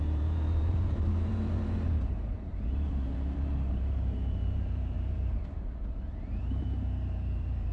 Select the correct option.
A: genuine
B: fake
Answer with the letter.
B